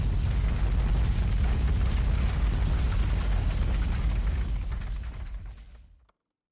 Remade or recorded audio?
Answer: recorded